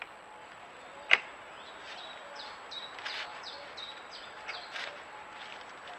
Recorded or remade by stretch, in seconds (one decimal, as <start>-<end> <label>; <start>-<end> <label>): 0.0-0.4 recorded; 0.4-1.5 remade; 1.5-3.3 recorded; 3.3-5.4 remade; 5.4-6.0 recorded